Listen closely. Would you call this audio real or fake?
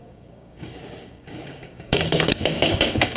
fake